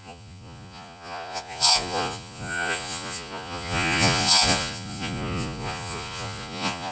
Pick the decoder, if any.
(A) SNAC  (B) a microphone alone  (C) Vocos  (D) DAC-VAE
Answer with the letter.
C